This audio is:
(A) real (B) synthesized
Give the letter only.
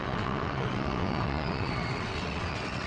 B